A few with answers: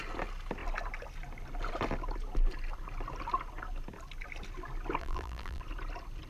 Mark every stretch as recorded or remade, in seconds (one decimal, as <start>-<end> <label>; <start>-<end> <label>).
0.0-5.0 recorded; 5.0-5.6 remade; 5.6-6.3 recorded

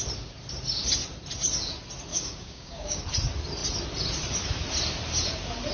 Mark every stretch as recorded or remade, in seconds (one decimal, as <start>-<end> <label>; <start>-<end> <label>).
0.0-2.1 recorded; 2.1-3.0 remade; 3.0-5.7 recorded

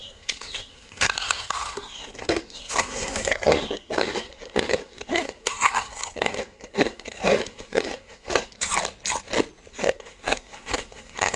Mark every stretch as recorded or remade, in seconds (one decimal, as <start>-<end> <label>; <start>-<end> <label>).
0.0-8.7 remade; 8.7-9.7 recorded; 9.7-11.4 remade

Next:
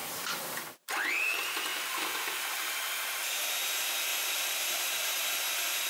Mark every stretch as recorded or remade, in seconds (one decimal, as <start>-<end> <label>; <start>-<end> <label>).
0.0-5.9 remade